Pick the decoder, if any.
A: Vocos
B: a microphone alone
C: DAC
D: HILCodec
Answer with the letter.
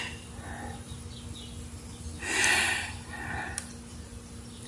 B